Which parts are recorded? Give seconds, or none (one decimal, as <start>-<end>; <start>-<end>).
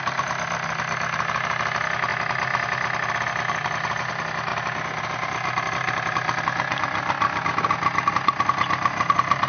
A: 0.0-9.5